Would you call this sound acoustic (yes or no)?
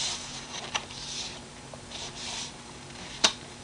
no